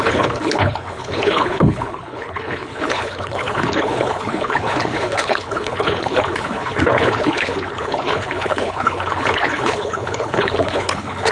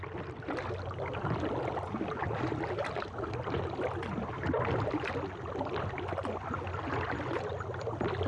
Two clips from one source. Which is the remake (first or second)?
first